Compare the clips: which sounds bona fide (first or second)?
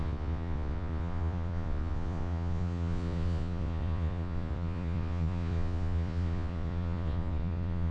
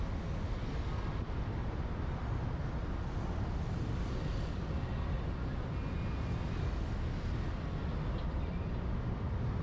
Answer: second